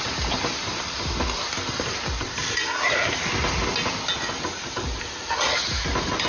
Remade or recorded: recorded